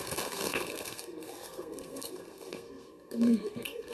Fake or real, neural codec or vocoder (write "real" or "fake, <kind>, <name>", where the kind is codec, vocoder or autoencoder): fake, codec, SNAC